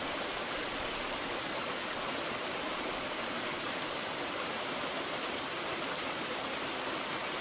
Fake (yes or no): yes